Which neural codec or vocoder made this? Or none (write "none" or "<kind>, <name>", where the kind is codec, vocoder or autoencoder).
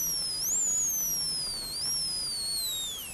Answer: none